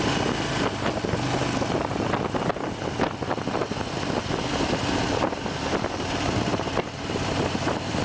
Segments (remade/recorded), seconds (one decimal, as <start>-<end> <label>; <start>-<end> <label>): 0.0-6.5 recorded; 6.5-8.0 remade